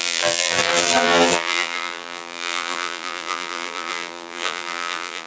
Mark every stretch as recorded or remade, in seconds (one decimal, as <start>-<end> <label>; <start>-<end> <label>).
0.0-5.3 remade

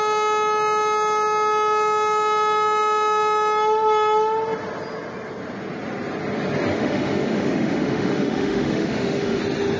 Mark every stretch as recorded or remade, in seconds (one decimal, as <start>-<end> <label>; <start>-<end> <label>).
0.0-6.7 recorded; 6.7-9.4 remade; 9.4-9.8 recorded

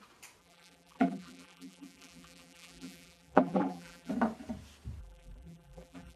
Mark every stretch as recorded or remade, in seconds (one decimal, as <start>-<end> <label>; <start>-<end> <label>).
0.0-0.4 recorded; 0.4-4.1 remade; 4.1-5.0 recorded; 5.0-6.2 remade

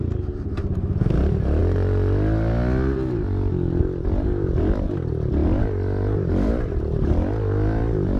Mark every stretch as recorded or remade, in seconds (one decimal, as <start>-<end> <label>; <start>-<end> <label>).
0.0-8.2 recorded

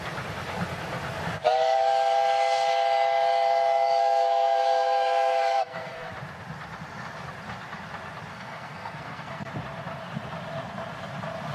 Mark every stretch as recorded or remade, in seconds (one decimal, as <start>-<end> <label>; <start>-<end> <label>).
0.0-4.0 recorded; 4.0-6.1 remade; 6.1-8.3 recorded; 8.3-9.5 remade; 9.5-11.5 recorded

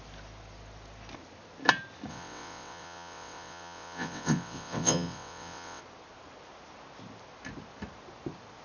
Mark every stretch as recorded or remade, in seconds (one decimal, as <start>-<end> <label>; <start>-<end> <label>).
0.0-2.1 recorded; 2.1-5.8 remade; 5.8-8.6 recorded

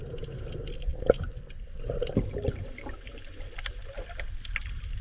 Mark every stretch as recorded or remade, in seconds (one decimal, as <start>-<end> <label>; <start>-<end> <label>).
0.0-0.9 recorded; 0.9-3.9 remade; 3.9-5.0 recorded